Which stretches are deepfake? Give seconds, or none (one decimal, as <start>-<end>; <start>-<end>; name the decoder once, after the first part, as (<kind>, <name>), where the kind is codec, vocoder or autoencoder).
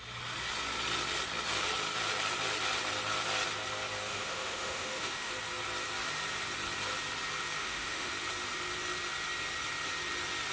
4.1-5.3 (autoencoder, DAC-VAE); 7.6-8.1